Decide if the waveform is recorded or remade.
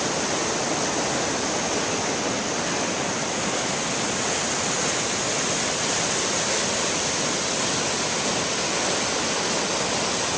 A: recorded